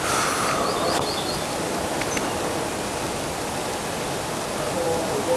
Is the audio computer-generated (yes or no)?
no